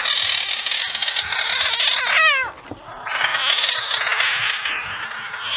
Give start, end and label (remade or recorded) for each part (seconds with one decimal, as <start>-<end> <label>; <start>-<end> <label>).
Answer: 0.0-5.6 recorded